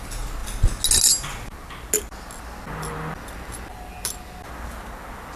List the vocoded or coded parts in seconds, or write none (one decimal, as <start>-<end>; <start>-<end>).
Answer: none